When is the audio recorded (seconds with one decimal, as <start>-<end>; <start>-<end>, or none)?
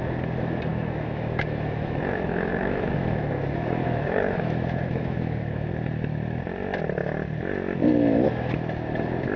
0.0-0.7; 5.7-9.4